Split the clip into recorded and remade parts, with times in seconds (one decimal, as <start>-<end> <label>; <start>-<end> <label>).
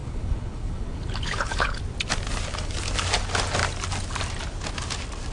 0.0-1.8 remade; 1.8-5.3 recorded